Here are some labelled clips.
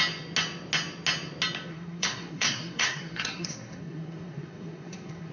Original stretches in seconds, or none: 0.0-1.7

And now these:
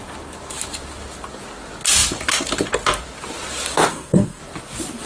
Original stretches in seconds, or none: 0.0-3.9; 4.4-5.1

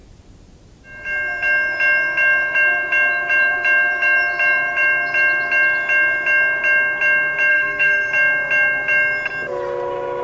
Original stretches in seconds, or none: 0.0-7.5; 8.1-10.2

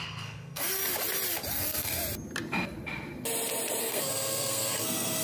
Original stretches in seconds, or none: 0.8-1.5; 2.0-3.8

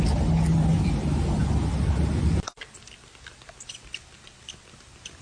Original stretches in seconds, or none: 0.0-5.2